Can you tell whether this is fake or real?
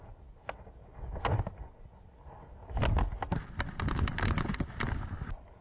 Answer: real